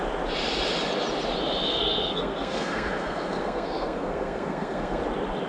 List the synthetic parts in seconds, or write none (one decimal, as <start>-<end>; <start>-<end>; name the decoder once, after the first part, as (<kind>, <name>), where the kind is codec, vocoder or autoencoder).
1.7-5.0 (codec, SNAC)